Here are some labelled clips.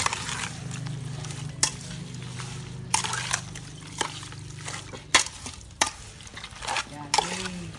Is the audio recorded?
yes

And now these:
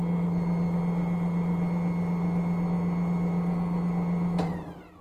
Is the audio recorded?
yes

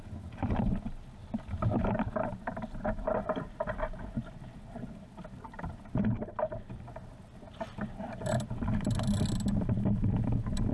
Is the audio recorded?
yes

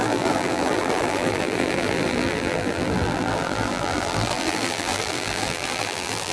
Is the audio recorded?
no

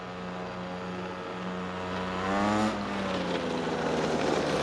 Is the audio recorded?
yes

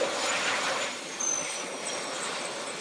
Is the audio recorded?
yes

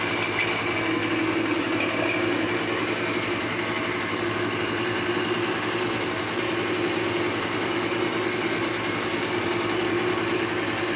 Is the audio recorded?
yes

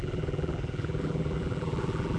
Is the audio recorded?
no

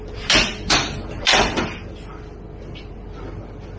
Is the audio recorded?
yes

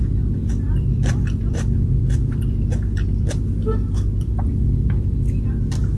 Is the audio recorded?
no